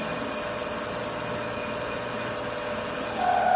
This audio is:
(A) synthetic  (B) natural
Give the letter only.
B